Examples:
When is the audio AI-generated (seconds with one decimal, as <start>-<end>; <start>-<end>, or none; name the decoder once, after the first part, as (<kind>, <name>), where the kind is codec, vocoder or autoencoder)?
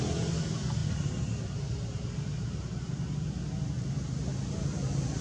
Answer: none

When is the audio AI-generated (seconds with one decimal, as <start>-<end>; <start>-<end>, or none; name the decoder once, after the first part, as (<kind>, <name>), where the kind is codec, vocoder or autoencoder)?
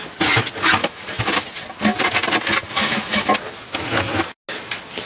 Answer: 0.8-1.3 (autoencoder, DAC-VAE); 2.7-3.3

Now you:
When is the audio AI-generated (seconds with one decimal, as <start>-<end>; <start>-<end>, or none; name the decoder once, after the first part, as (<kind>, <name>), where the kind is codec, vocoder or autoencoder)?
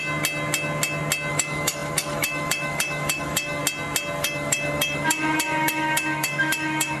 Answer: 1.3-3.6 (autoencoder, DAC-VAE); 4.2-7.0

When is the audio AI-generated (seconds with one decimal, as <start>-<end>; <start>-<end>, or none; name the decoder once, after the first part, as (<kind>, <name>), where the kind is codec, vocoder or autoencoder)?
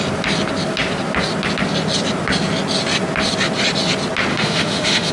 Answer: 4.3-5.1 (autoencoder, DAC-VAE)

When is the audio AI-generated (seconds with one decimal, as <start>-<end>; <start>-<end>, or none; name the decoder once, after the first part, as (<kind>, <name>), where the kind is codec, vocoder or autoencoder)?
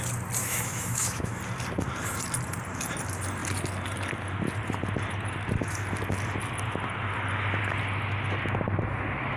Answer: 0.4-1.4 (autoencoder, DAC-VAE)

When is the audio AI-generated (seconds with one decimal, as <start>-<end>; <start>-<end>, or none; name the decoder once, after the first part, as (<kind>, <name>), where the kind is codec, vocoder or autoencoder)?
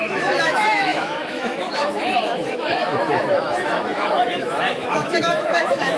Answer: 0.0-6.0 (autoencoder, DAC-VAE)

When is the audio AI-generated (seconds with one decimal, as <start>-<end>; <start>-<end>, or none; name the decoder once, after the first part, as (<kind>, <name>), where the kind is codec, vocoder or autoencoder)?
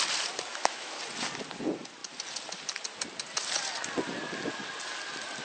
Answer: 0.5-1.0 (autoencoder, DAC-VAE)